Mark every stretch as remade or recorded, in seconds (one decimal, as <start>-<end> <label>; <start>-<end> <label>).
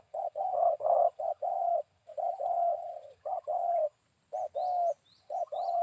0.0-4.0 remade; 4.0-5.2 recorded; 5.2-5.8 remade